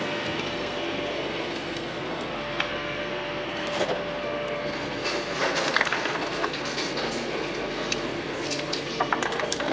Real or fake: fake